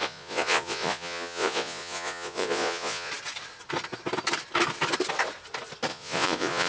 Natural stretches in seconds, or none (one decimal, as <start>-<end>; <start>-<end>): 3.1-5.9